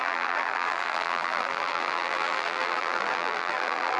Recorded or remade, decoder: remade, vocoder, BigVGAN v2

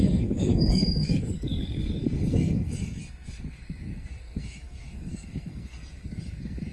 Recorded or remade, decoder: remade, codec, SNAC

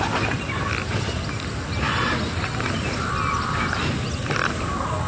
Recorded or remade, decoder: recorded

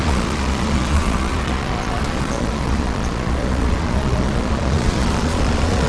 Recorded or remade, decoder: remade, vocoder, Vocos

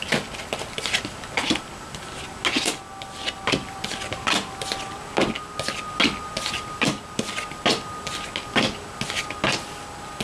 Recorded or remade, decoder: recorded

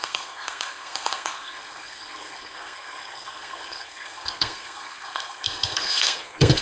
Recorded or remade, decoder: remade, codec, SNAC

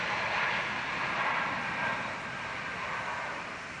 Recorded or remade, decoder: recorded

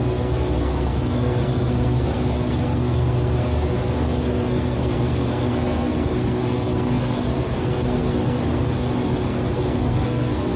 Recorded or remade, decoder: remade, codec, SNAC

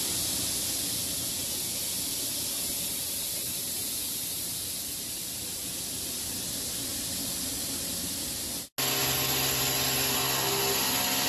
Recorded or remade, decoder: recorded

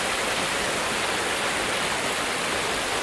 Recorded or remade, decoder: recorded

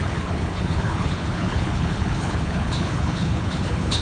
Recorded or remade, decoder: remade, codec, HILCodec